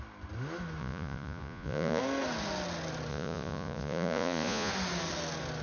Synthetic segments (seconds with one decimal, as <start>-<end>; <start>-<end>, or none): 0.8-2.0; 3.1-4.7